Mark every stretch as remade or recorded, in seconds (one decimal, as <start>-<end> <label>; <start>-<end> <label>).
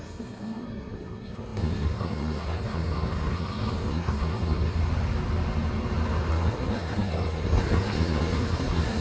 0.0-4.8 remade; 4.8-6.3 recorded; 6.3-9.0 remade